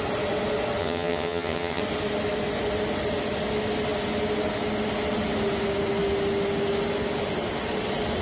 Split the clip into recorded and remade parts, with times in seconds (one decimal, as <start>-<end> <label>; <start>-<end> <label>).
0.0-0.8 recorded; 0.8-1.8 remade; 1.8-8.2 recorded